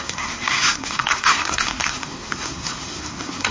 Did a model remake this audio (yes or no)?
yes